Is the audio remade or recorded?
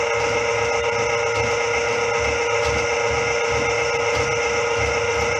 recorded